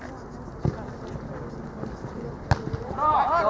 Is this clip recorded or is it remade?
recorded